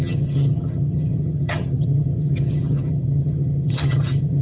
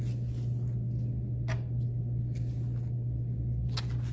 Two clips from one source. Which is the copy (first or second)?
first